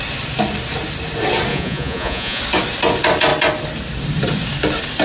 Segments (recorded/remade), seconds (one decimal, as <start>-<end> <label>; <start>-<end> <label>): 0.0-1.5 recorded; 1.5-2.4 remade; 2.4-5.0 recorded